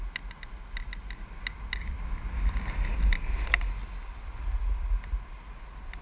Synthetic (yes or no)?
no